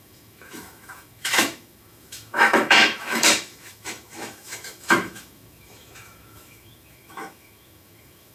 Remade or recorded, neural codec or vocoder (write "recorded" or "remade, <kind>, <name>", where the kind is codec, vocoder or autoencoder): remade, autoencoder, DAC-VAE